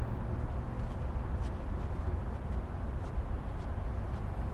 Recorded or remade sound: recorded